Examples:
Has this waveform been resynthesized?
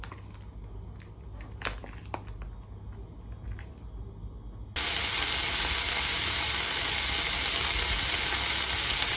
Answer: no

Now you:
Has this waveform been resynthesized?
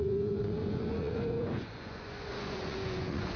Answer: yes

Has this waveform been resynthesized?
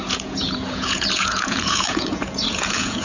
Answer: yes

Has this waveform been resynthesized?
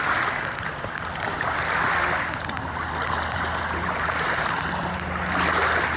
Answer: no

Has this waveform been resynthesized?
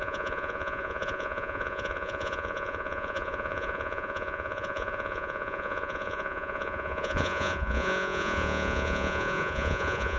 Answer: yes